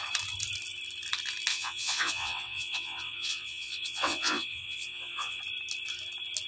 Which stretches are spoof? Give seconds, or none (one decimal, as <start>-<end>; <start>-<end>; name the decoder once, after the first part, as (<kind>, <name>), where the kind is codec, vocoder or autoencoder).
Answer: 1.5-5.4 (vocoder, WaveNeXt)